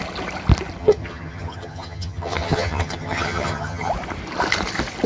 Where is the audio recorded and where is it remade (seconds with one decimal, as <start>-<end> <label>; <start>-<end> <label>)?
0.0-0.8 recorded; 0.8-3.9 remade; 3.9-5.1 recorded

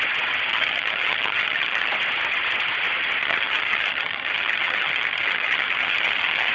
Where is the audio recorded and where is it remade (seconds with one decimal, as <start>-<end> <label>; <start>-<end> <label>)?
0.0-0.5 recorded; 0.5-1.9 remade; 1.9-3.2 recorded; 3.2-6.5 remade

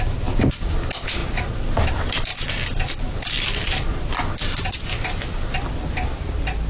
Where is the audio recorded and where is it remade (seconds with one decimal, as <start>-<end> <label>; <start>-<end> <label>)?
0.0-6.7 recorded

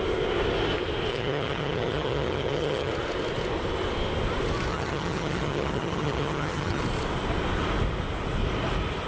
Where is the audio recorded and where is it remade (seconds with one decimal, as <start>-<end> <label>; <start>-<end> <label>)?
0.0-1.1 recorded; 1.1-2.9 remade; 2.9-4.7 recorded; 4.7-6.8 remade; 6.8-9.1 recorded